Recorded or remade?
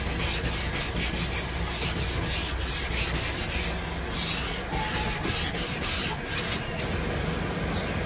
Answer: recorded